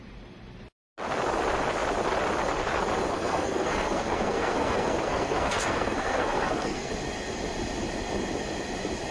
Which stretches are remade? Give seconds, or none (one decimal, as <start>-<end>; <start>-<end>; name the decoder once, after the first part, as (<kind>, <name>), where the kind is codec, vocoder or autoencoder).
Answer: 3.1-6.9 (codec, SNAC)